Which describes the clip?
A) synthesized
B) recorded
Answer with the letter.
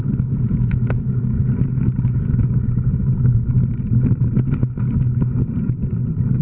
B